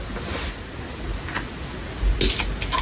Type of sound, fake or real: real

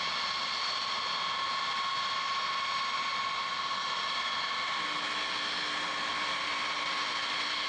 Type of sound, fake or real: real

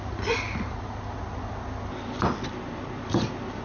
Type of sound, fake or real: real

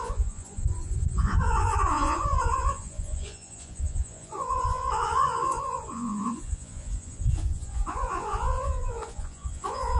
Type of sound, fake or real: fake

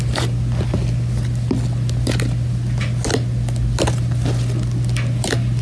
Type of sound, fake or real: real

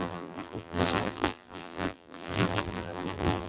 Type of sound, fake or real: fake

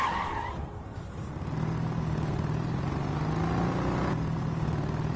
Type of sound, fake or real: real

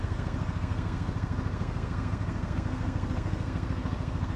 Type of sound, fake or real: fake